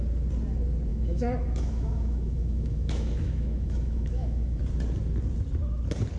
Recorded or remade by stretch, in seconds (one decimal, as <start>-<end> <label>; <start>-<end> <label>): 0.0-0.9 recorded; 0.9-4.6 remade; 4.6-6.2 recorded